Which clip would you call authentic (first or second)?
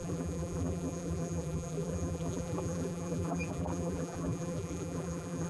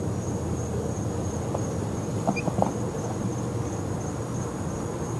second